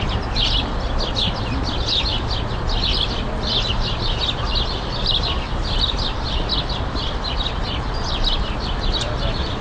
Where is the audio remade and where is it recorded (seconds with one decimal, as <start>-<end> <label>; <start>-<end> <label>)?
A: 0.0-9.6 recorded